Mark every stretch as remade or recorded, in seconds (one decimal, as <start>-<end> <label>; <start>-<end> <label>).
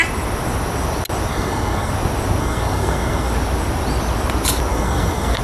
0.0-1.3 recorded; 1.3-1.9 remade; 1.9-2.4 recorded; 2.4-3.3 remade; 3.3-4.7 recorded; 4.7-5.4 remade